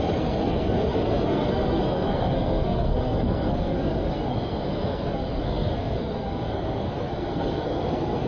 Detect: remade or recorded remade